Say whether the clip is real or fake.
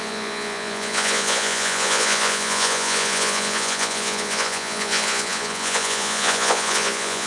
fake